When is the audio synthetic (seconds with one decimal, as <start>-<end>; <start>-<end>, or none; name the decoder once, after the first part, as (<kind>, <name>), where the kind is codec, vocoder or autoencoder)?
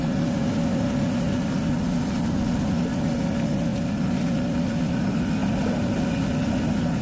none